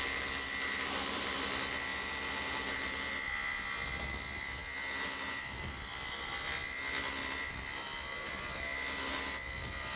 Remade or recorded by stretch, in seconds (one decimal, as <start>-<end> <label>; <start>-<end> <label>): 0.0-10.0 recorded